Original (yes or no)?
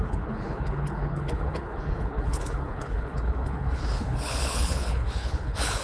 no